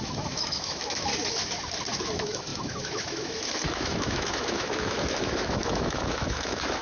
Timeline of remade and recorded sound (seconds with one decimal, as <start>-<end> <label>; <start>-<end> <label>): 0.0-1.1 remade; 1.1-1.9 recorded; 1.9-6.8 remade